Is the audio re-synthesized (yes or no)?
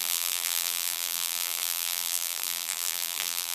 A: yes